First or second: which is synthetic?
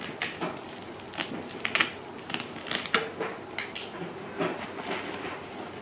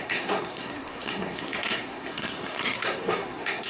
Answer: second